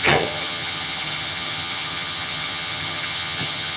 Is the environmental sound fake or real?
fake